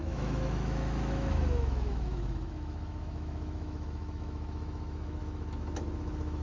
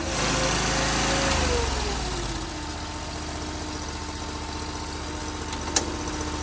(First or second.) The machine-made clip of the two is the first